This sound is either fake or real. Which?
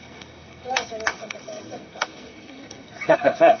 fake